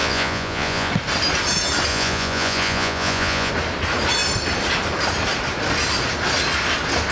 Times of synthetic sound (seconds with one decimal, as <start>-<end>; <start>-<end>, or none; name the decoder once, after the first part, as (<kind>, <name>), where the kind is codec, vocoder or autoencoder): 0.0-0.9 (vocoder, Vocos); 1.9-3.5